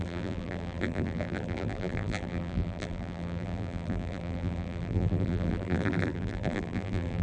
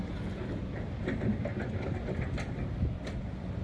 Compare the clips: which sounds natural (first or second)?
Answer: second